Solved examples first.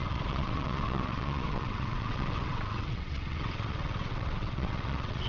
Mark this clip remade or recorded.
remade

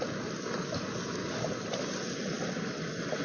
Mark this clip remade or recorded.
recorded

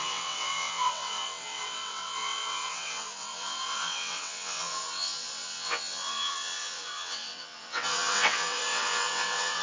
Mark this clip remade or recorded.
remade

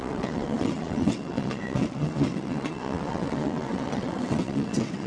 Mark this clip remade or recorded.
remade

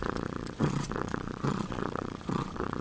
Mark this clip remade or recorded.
remade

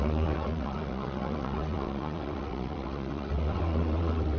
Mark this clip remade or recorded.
remade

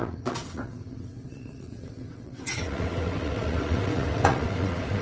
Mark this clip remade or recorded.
remade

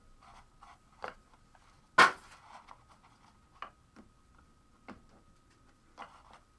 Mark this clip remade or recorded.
recorded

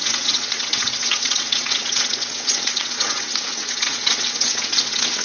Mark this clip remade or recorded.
remade